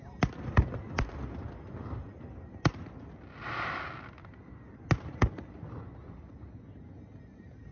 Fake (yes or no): no